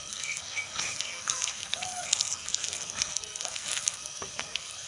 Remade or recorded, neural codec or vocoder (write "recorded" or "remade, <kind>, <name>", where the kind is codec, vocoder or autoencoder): remade, codec, SNAC